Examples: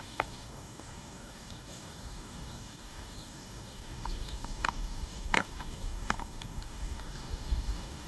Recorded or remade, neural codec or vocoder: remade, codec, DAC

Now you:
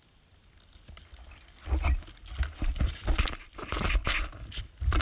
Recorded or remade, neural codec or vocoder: recorded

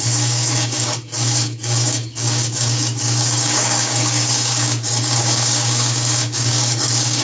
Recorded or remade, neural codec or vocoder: remade, codec, DAC